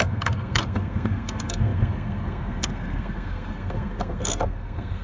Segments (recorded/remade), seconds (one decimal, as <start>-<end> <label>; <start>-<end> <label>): 0.0-5.0 remade